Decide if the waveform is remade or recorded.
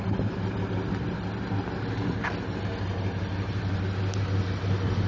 recorded